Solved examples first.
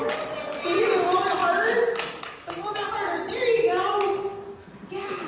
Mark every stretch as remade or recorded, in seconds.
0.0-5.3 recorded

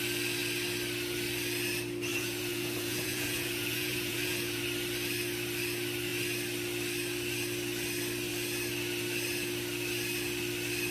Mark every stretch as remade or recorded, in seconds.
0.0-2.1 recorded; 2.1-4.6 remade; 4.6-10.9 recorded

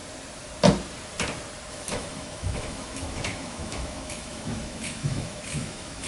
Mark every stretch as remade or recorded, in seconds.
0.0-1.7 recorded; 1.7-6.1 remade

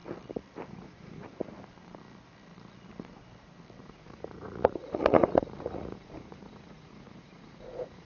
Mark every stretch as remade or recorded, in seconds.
0.0-0.7 recorded; 0.7-1.2 remade; 1.2-3.8 recorded; 3.8-8.0 remade

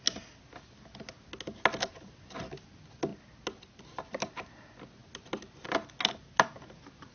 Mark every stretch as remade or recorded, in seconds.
0.0-7.1 recorded